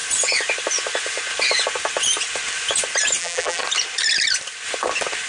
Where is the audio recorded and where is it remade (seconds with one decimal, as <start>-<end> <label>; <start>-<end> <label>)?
0.0-3.2 recorded; 3.2-3.6 remade; 3.6-5.3 recorded